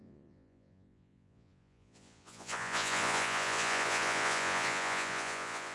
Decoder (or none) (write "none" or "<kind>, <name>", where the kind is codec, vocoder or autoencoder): vocoder, Vocos